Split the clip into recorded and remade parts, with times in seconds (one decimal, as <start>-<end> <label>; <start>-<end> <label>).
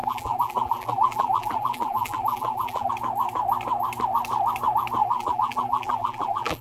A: 0.0-2.9 remade; 2.9-5.0 recorded; 5.0-6.6 remade